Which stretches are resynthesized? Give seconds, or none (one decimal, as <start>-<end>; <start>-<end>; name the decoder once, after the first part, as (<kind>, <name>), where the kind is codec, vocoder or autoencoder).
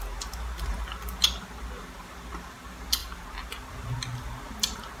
none